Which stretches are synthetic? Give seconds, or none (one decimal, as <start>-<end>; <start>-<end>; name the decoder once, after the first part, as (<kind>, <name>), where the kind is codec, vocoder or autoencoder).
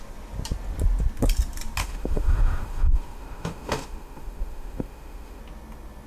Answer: 1.8-5.4 (autoencoder, DAC-VAE)